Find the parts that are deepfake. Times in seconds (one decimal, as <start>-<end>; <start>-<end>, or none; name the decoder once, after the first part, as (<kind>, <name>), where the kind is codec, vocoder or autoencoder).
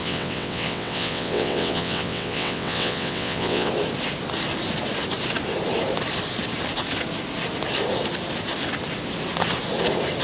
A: 0.0-3.7 (vocoder, WaveNeXt)